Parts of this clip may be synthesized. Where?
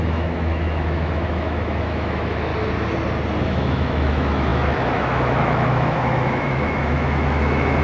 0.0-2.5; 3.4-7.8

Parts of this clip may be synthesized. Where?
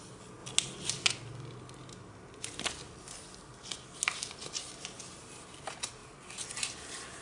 none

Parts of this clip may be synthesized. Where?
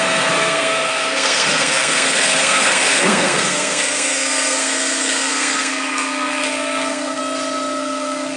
0.0-7.2; 7.8-8.4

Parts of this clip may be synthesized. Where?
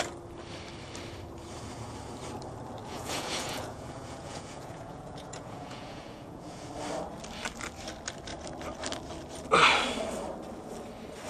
2.8-6.7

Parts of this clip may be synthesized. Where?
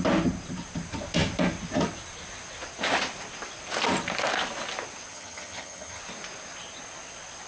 5.1-6.0